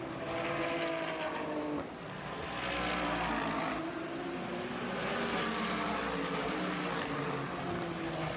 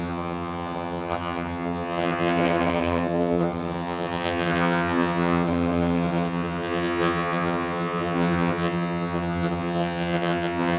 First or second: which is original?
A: first